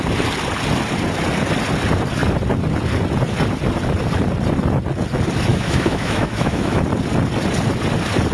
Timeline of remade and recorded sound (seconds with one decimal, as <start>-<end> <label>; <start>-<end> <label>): 0.0-5.5 recorded; 5.5-6.8 remade; 6.8-8.3 recorded